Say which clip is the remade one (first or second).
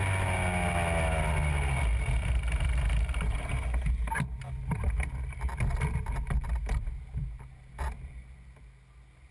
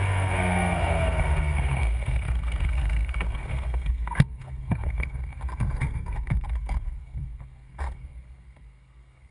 second